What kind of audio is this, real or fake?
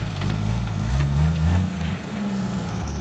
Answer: fake